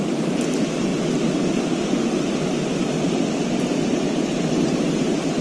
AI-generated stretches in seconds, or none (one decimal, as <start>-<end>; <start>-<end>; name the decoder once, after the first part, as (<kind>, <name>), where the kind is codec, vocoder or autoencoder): none